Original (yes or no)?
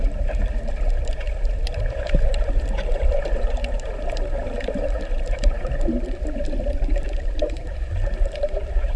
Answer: no